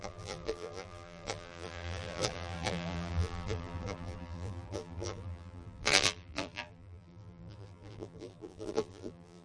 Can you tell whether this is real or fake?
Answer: fake